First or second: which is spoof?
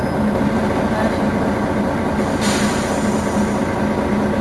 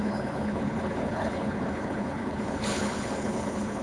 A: second